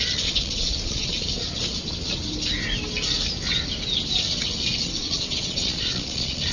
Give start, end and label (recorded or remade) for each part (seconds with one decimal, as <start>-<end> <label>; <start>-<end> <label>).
0.0-1.1 remade; 1.1-5.0 recorded; 5.0-6.5 remade